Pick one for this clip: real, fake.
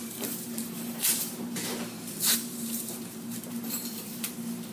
fake